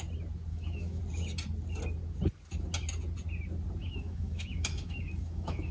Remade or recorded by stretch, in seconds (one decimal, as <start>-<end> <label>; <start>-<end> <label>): 0.0-0.5 recorded; 0.5-1.0 remade; 1.0-3.8 recorded; 3.8-5.7 remade